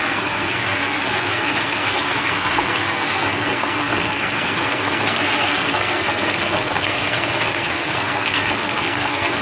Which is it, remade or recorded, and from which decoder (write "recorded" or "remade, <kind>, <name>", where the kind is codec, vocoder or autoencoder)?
remade, codec, SNAC